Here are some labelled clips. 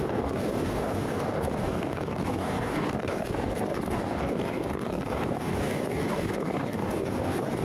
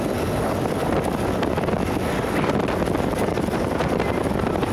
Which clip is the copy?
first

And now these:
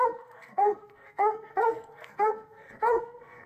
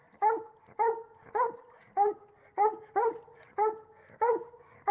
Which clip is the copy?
first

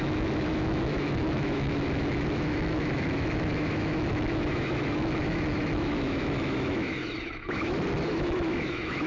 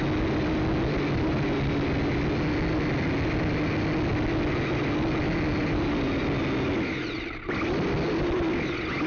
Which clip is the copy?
first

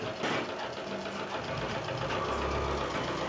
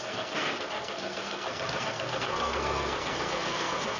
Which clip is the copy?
second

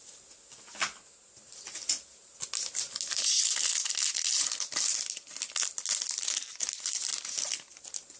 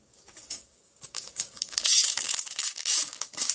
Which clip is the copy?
second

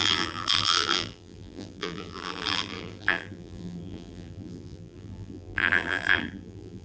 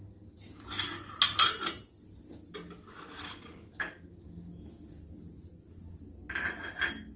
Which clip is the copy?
first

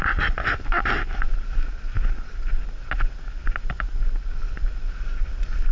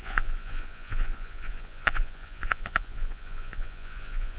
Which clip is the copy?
second